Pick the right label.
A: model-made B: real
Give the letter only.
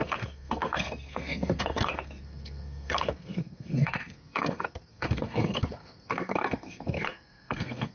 A